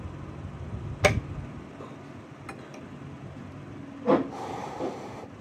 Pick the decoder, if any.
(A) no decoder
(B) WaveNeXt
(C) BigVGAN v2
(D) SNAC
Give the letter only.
A